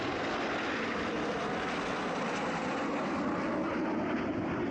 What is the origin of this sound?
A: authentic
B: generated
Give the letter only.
A